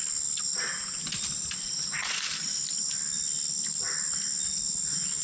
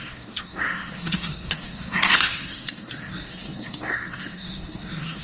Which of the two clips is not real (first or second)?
second